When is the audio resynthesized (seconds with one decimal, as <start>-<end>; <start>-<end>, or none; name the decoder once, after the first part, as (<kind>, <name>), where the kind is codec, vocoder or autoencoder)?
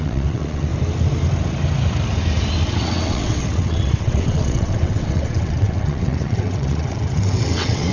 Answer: 0.0-0.7 (vocoder, WaveNeXt); 2.7-7.9